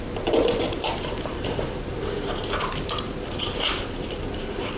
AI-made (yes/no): yes